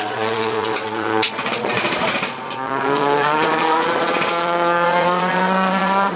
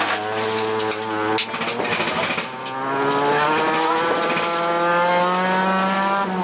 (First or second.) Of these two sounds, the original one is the second